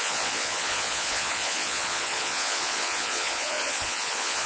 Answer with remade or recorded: remade